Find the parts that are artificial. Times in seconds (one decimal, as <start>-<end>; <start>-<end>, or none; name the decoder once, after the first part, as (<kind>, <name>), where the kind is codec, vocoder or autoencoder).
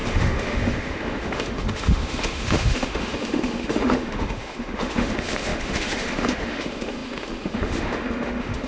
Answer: 0.0-8.7 (autoencoder, DAC-VAE)